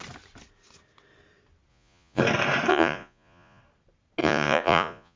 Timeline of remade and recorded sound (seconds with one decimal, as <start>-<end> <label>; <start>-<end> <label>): 0.0-1.7 recorded; 1.7-2.2 remade; 2.2-2.7 recorded; 2.7-3.6 remade; 3.6-4.2 recorded; 4.2-5.2 remade